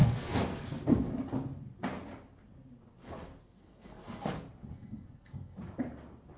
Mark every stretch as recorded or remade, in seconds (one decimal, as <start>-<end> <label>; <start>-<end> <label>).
0.0-1.1 remade; 1.1-3.4 recorded; 3.4-4.3 remade; 4.3-4.7 recorded; 4.7-5.6 remade; 5.6-6.4 recorded